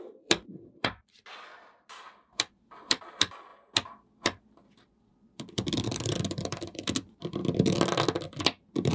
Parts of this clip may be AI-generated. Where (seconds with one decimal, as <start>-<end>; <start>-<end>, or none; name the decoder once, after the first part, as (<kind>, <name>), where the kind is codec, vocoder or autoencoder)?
0.0-3.5 (vocoder, BigVGAN v2); 5.0-7.4